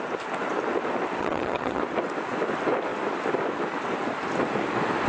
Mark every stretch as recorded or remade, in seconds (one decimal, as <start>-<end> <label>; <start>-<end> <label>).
0.0-1.2 recorded; 1.2-1.8 remade; 1.8-5.1 recorded